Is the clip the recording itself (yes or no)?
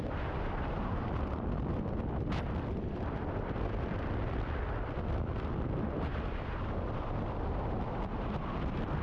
no